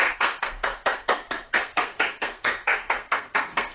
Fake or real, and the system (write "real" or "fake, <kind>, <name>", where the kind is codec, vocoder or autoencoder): fake, codec, SNAC